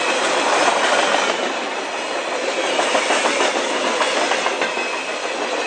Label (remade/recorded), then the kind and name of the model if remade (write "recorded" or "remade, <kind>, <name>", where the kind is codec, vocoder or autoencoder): recorded